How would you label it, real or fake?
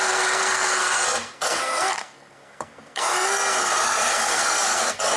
fake